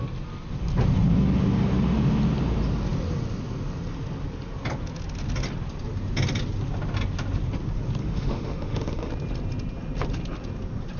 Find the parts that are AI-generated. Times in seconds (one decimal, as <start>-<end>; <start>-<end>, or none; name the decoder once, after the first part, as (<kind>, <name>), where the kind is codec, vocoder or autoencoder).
8.0-9.1 (autoencoder, DAC-VAE)